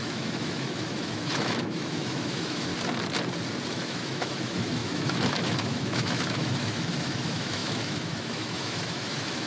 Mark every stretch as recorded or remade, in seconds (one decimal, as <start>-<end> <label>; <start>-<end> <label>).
0.0-2.7 remade; 2.7-3.7 recorded; 3.7-9.5 remade